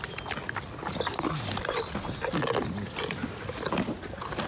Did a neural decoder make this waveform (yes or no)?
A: no